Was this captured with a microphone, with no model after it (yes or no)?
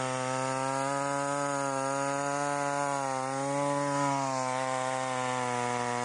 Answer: yes